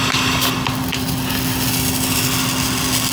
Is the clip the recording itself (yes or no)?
yes